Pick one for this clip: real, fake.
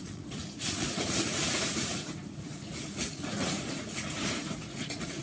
fake